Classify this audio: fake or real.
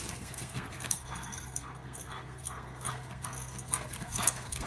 fake